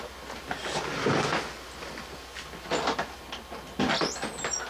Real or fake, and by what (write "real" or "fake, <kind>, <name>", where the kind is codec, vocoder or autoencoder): real